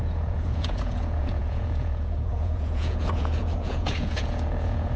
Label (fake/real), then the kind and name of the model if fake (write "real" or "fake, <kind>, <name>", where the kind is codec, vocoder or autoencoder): fake, vocoder, Vocos